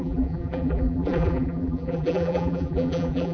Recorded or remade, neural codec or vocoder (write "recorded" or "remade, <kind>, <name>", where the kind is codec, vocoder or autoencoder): remade, vocoder, BigVGAN v2